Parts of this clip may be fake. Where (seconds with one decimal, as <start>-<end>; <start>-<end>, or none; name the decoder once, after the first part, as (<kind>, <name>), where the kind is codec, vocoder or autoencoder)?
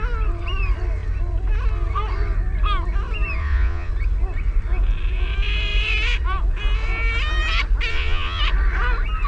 3.4-3.9 (vocoder, Vocos); 7.9-8.4